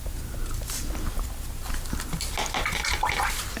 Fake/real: real